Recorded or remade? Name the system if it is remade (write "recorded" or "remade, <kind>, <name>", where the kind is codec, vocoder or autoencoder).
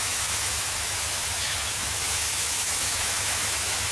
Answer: remade, autoencoder, DAC-VAE